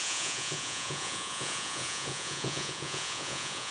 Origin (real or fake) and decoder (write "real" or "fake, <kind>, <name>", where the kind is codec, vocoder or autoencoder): fake, vocoder, Vocos